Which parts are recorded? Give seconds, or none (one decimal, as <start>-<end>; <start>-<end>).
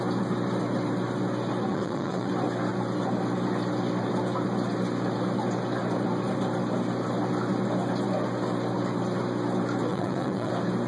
0.0-1.7; 2.3-9.9; 10.5-10.9